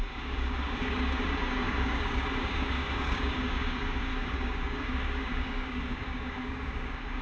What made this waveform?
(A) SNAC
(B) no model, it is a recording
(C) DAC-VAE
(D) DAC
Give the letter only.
D